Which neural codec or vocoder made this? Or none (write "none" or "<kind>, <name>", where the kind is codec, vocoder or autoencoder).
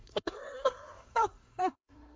codec, SNAC